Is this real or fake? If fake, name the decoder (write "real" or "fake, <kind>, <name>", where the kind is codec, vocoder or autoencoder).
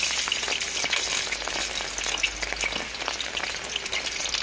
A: real